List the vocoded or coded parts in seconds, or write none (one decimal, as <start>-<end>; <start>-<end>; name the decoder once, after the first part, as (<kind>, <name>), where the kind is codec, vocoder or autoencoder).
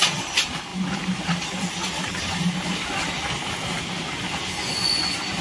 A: 4.4-5.4 (vocoder, Vocos)